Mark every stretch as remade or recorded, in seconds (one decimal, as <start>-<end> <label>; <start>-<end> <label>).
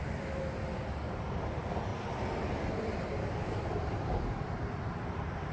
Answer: 0.0-1.9 recorded; 1.9-5.5 remade